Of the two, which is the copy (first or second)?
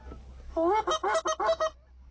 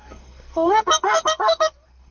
second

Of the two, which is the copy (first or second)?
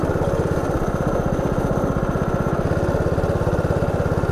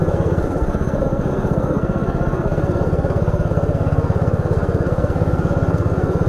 second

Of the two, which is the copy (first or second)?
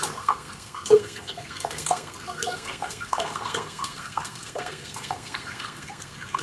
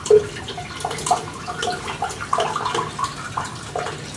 first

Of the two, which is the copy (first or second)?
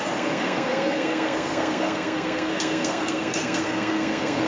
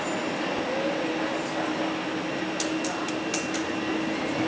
first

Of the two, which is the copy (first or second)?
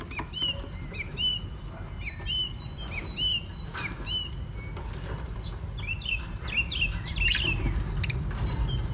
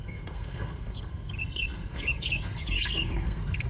second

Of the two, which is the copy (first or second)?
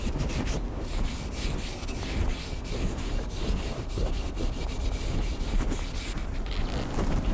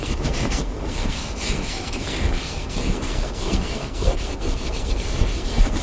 second